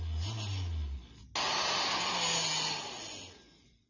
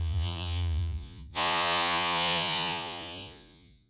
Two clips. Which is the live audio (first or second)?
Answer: first